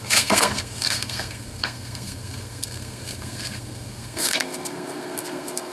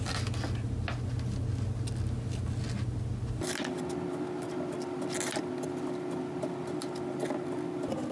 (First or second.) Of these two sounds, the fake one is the first